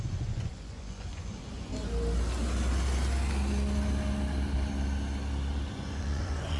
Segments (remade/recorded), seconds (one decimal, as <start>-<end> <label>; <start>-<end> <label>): 0.0-1.7 remade; 1.7-5.7 recorded; 5.7-6.6 remade